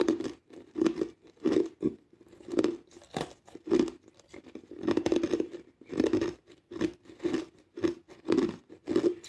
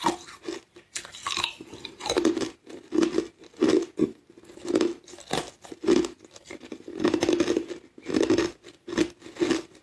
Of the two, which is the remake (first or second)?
first